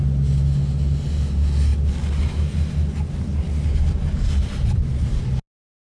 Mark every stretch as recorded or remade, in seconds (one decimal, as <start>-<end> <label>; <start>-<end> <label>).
0.0-5.9 recorded